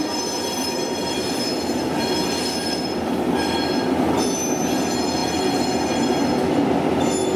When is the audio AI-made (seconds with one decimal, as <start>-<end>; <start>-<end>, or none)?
none